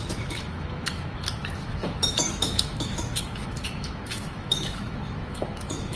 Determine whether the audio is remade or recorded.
remade